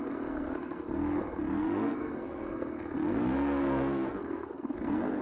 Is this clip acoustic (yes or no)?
no